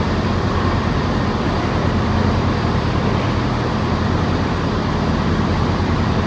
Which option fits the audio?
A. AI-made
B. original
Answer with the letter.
A